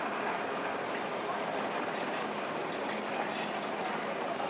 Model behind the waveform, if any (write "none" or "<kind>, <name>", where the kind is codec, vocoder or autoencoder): none